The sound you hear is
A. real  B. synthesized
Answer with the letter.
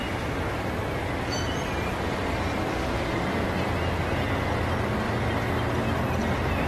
A